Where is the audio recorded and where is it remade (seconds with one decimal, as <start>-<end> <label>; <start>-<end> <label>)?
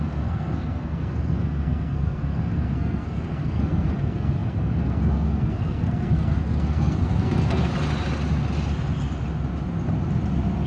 0.0-7.7 remade; 7.7-10.7 recorded